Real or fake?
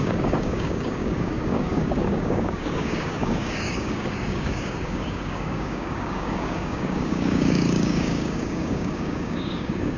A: fake